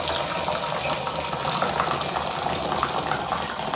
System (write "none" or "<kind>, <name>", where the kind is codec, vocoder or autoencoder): none